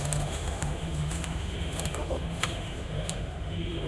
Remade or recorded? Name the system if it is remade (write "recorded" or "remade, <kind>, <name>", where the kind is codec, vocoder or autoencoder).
remade, autoencoder, DAC-VAE